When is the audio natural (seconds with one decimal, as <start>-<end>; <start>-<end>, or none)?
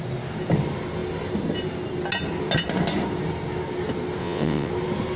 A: 0.0-4.2; 4.7-5.2